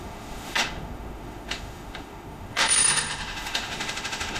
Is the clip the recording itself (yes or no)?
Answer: no